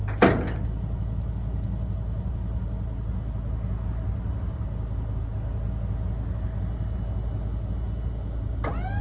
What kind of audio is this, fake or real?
real